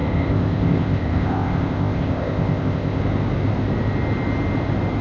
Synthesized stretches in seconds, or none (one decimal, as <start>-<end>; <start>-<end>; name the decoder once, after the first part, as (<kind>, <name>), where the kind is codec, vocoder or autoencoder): 0.0-3.0 (codec, ZipCodec)

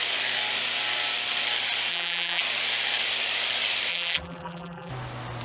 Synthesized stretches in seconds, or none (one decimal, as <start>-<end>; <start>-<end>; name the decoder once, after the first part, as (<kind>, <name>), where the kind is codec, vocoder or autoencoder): 1.9-2.4 (vocoder, BigVGAN v2); 3.9-4.9

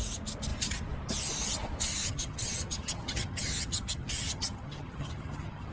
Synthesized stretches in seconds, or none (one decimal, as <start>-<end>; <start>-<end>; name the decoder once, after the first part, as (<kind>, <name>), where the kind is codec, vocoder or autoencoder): 2.0-5.7 (vocoder, HiFi-GAN)

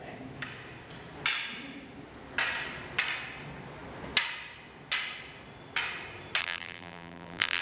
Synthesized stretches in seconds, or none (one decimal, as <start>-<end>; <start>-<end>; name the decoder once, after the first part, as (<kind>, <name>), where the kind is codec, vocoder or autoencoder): 6.4-7.6 (vocoder, BigVGAN v2)

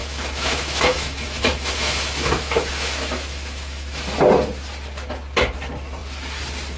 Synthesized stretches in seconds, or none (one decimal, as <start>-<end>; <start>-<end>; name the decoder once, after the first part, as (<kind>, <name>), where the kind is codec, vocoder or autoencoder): 0.0-4.1 (autoencoder, DAC-VAE)

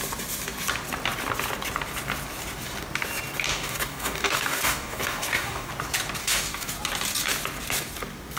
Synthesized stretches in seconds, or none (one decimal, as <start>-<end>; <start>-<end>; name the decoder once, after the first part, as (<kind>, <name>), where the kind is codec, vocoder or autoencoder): 3.5-5.7 (codec, DAC); 6.2-6.7

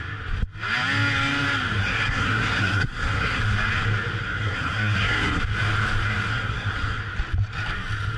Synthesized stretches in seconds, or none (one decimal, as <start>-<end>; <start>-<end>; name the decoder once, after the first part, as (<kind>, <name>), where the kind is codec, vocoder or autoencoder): 1.8-3.4 (codec, SNAC); 4.2-5.4; 6.3-7.0

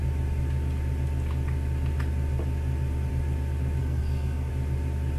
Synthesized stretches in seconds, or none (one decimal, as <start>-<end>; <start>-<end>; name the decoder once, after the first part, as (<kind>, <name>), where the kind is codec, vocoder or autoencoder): 3.8-4.5 (codec, SNAC)